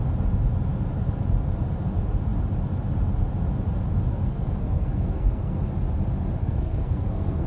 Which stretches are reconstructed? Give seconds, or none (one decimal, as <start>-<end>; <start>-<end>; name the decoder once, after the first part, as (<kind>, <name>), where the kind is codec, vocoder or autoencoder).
4.1-5.6 (codec, SNAC); 6.4-7.5